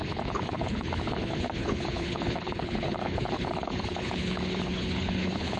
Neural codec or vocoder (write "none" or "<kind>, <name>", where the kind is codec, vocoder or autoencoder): codec, HILCodec